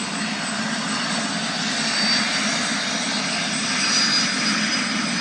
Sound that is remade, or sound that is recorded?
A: recorded